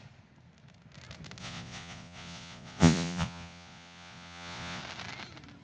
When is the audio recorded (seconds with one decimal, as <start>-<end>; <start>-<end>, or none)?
0.0-1.4; 4.8-5.6